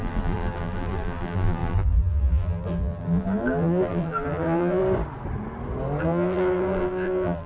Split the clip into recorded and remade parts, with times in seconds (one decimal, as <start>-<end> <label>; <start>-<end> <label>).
0.0-4.8 remade; 4.8-6.0 recorded; 6.0-7.5 remade